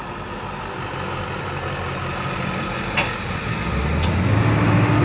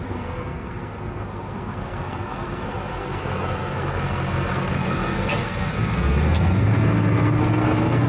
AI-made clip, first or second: second